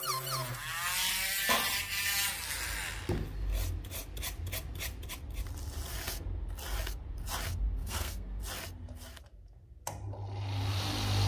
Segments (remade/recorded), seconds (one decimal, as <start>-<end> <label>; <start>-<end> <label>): 0.0-7.8 recorded; 7.8-8.4 remade; 8.4-11.3 recorded